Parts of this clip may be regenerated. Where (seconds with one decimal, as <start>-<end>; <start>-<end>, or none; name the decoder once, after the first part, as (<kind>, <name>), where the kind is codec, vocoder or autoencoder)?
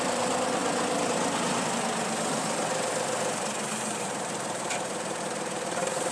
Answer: 0.0-0.6 (vocoder, BigVGAN v2); 3.7-6.1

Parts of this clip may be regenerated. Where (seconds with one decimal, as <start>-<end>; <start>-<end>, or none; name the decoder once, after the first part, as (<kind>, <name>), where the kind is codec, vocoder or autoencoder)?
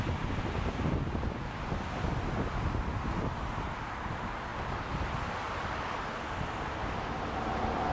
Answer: none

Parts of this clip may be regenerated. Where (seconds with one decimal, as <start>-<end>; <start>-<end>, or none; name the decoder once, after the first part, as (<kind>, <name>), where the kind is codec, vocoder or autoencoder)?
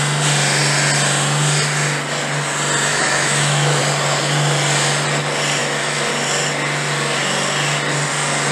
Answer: 2.9-3.8 (autoencoder, DAC-VAE); 5.6-6.1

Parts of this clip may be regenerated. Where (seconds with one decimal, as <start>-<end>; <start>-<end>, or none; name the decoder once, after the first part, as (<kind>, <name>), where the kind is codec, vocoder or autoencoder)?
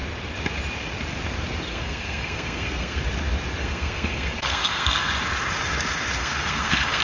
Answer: 1.7-3.0 (codec, SNAC); 3.6-5.1; 6.2-7.0